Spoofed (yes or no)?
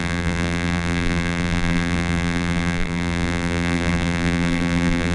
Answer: yes